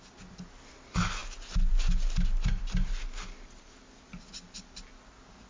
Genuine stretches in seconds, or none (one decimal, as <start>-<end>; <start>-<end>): 0.0-5.5